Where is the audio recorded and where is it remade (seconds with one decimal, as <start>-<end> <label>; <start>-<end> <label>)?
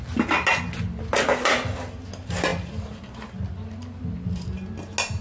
0.0-5.2 recorded